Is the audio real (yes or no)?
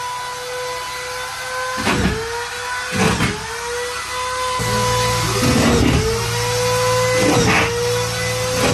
yes